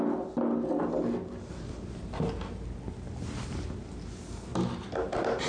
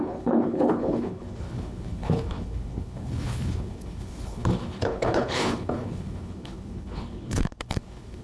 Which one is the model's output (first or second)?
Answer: second